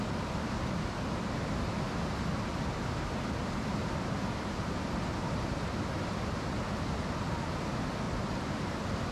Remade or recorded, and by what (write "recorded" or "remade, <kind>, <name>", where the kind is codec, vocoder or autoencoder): recorded